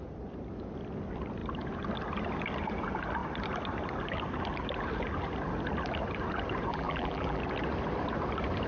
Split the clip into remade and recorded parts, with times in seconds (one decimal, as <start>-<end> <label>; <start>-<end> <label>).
0.0-6.7 recorded; 6.7-7.4 remade; 7.4-8.7 recorded